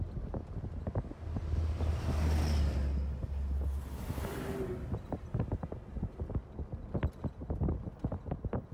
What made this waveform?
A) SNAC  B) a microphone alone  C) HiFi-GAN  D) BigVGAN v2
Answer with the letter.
B